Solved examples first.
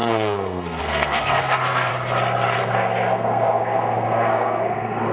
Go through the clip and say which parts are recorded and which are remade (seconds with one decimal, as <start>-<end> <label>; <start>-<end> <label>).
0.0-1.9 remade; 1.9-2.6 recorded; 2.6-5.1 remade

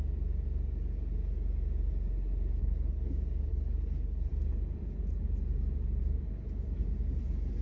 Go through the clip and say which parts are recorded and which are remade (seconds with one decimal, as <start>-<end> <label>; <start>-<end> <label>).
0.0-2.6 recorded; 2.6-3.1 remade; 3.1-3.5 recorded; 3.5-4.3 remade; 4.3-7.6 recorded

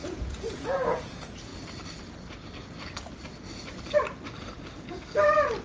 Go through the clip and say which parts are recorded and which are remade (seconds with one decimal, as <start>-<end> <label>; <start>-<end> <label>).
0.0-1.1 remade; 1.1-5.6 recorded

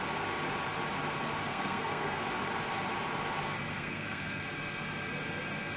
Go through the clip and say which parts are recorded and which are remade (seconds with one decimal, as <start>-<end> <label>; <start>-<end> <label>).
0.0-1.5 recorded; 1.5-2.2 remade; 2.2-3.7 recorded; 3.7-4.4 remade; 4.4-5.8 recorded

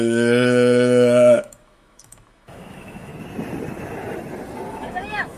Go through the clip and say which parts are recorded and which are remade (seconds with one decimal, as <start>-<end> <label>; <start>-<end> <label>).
0.0-3.1 remade; 3.1-4.7 recorded; 4.7-5.4 remade